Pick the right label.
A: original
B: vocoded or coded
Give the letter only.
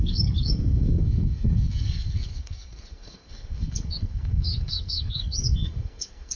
B